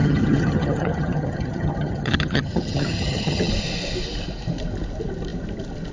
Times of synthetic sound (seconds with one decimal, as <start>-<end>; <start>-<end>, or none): 0.0-3.5